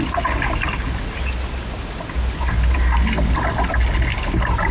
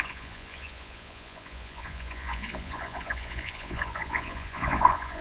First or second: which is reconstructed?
second